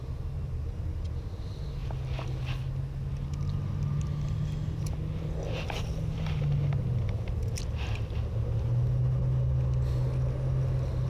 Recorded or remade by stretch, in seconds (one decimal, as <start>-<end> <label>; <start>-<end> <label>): 0.0-11.1 recorded